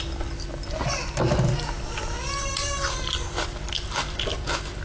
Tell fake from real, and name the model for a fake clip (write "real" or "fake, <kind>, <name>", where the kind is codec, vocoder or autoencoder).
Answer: real